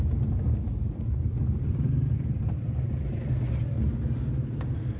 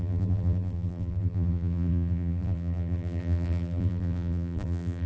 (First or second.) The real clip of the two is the first